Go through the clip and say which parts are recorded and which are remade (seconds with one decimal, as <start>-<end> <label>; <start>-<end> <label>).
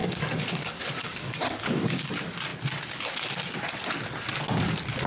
0.0-2.1 remade; 2.1-5.1 recorded